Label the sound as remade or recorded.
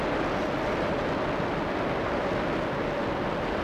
recorded